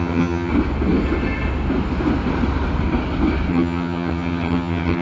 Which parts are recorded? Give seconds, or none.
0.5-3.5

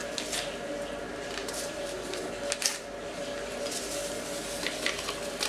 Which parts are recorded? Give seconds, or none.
0.0-1.4; 2.2-5.5

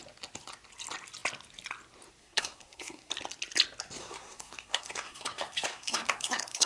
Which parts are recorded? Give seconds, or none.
0.0-2.2; 3.1-4.0

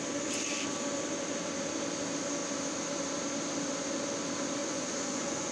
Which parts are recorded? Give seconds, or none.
0.0-4.6

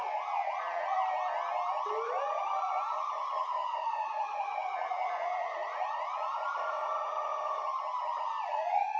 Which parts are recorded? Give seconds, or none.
1.0-2.6; 7.3-8.5